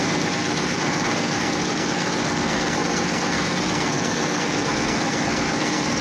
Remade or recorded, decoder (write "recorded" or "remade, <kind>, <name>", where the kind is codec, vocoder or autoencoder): remade, codec, SNAC